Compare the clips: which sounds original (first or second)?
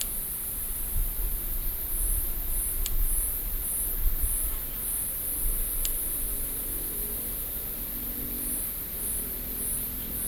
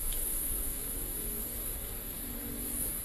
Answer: first